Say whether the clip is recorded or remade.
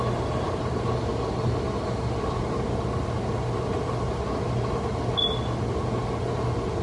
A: recorded